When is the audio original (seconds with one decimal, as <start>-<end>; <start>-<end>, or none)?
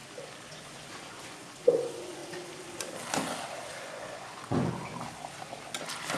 0.0-0.5; 2.2-3.8; 4.9-6.2